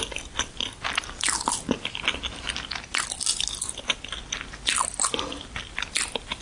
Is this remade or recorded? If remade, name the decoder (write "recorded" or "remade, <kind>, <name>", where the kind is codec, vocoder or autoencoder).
recorded